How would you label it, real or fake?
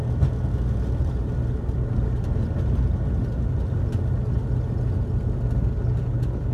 real